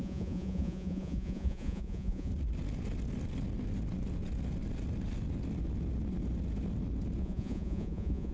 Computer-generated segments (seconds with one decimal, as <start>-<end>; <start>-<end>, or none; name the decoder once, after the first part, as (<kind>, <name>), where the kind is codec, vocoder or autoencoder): 0.0-2.3 (vocoder, Vocos); 7.2-8.3